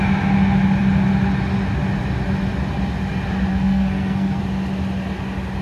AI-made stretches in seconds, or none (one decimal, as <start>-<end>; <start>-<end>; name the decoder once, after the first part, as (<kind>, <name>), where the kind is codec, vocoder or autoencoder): 3.5-4.4 (codec, SNAC)